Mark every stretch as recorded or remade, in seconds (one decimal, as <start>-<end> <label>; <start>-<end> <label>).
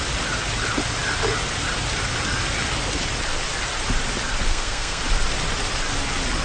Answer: 0.0-4.5 recorded; 4.5-5.0 remade; 5.0-6.4 recorded